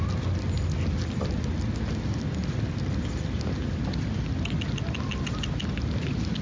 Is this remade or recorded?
recorded